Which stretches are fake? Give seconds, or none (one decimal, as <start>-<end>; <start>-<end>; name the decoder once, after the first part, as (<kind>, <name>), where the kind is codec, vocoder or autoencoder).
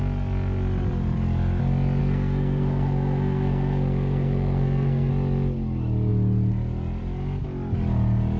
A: 2.0-5.1 (codec, SNAC)